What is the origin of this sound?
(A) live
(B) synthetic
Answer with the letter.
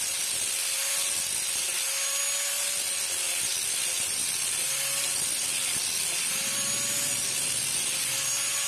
A